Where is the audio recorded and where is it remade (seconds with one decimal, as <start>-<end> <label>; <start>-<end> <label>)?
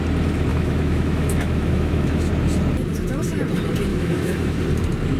0.0-0.5 recorded; 0.5-2.3 remade; 2.3-3.9 recorded; 3.9-4.6 remade; 4.6-5.2 recorded